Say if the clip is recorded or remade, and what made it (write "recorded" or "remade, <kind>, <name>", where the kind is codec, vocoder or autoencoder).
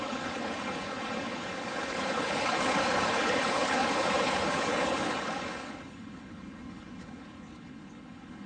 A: remade, codec, HILCodec